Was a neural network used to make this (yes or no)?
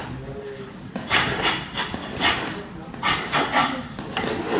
no